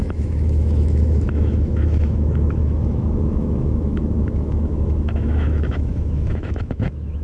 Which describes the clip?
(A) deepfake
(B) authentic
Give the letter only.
A